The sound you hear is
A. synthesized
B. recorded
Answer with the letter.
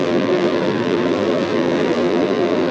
A